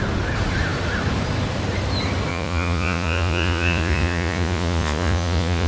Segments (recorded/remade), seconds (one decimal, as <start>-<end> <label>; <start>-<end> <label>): 0.0-2.3 recorded; 2.3-5.7 remade